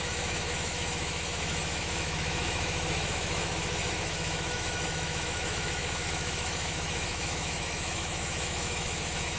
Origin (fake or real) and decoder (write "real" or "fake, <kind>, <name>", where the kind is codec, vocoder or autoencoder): fake, autoencoder, DAC-VAE